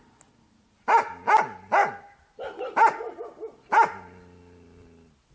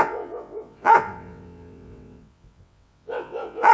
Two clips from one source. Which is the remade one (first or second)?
second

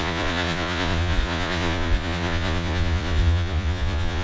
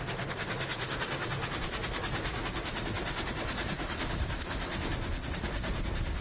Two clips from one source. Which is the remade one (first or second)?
first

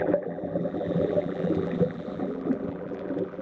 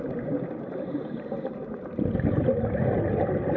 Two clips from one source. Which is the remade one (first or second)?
first